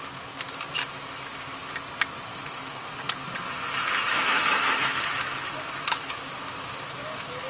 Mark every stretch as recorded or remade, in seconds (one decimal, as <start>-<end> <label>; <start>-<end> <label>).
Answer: 0.0-0.8 recorded; 0.8-1.7 remade; 1.7-2.3 recorded; 2.3-2.9 remade; 2.9-4.0 recorded; 4.0-7.5 remade